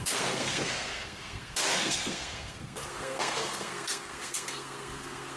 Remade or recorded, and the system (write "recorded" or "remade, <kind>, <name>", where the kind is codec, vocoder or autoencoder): remade, codec, SNAC